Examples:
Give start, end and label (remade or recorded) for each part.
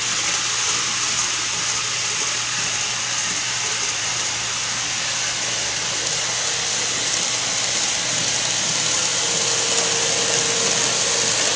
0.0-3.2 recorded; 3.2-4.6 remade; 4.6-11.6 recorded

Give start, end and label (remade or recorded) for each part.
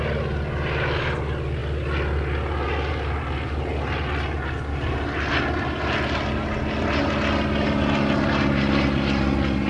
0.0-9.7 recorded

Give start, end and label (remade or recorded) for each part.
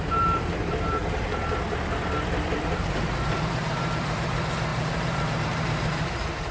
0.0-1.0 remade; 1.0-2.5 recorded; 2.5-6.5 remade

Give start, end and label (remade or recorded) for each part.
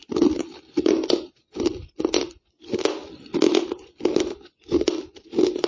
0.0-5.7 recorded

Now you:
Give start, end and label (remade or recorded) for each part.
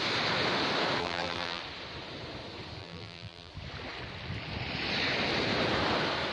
0.0-1.0 recorded; 1.0-1.6 remade; 1.6-2.8 recorded; 2.8-3.5 remade; 3.5-6.3 recorded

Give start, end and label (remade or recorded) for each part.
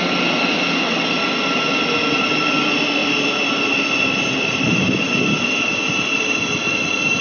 0.0-7.2 recorded